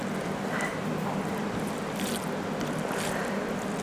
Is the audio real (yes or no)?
no